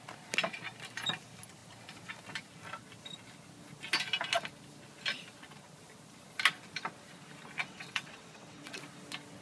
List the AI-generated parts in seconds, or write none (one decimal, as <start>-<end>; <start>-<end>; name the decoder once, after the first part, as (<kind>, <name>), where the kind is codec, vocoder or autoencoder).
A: 7.6-8.8 (vocoder, WaveNeXt)